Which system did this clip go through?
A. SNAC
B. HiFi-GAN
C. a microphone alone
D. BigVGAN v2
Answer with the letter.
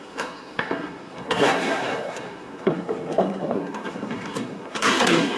A